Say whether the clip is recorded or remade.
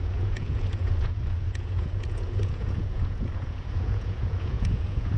remade